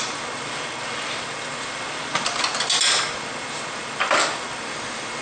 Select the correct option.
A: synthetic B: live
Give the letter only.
B